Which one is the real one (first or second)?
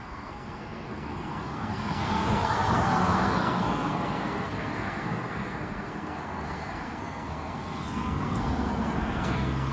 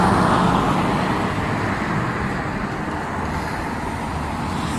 second